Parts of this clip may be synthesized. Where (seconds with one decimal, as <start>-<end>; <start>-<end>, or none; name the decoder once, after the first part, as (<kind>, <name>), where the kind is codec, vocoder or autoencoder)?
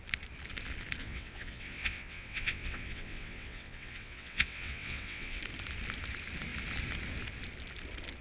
1.0-5.4 (vocoder, WaveNeXt)